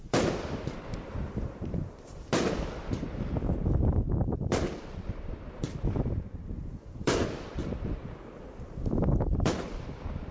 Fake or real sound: fake